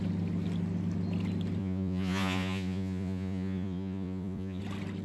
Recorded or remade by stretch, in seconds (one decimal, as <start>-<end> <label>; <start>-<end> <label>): 0.0-1.6 recorded; 1.6-4.6 remade; 4.6-5.0 recorded